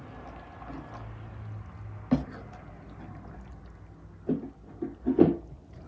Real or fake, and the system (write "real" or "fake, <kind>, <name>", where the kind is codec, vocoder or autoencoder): real